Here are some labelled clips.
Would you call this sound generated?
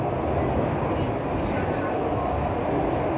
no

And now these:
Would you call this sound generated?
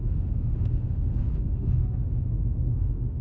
yes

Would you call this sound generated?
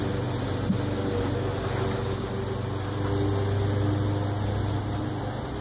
no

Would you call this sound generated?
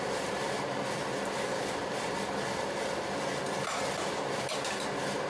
no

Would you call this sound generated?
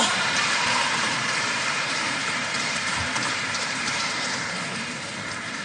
yes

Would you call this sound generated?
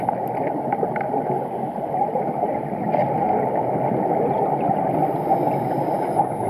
no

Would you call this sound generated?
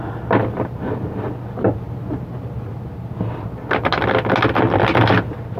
no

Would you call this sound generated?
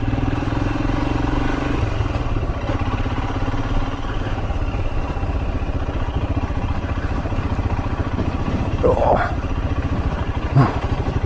yes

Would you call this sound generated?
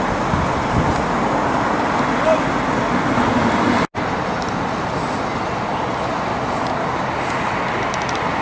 no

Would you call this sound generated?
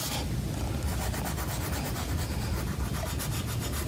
yes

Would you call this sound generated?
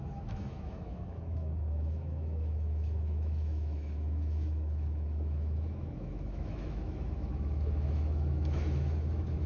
yes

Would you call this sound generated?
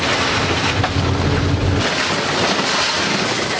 no